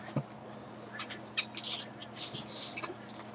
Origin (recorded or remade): recorded